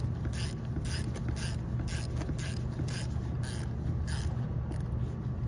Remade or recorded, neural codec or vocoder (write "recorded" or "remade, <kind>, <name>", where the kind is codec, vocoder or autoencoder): recorded